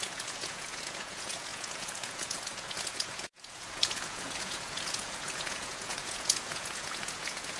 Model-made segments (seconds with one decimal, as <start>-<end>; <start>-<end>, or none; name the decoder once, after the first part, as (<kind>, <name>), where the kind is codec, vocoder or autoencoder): 0.0-7.6 (vocoder, Vocos)